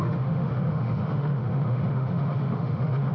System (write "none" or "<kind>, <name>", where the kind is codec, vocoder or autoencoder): autoencoder, DAC-VAE